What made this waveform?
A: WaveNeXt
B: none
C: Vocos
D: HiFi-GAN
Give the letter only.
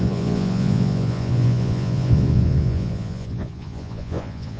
C